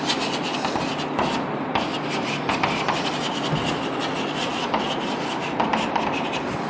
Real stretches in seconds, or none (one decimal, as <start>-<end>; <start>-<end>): 0.0-6.7